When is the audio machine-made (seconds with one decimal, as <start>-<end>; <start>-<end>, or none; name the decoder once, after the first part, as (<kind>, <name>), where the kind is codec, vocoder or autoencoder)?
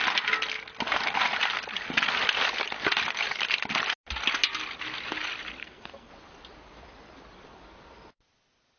5.6-6.1 (codec, SNAC)